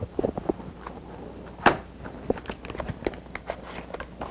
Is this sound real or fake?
real